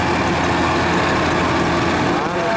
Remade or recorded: recorded